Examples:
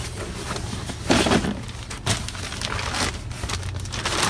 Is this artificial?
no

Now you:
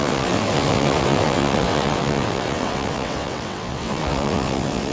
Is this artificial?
yes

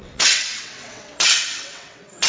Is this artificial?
yes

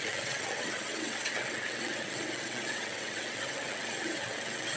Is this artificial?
yes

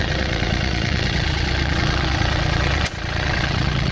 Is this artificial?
yes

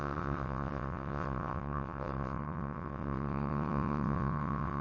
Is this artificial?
yes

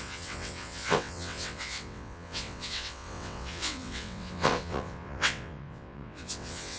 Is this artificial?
yes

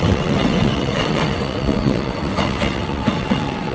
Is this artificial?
yes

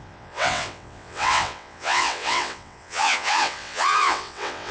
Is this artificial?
yes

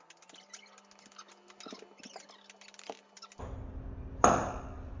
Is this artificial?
no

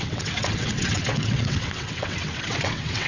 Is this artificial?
yes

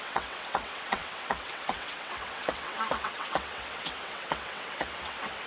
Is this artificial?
yes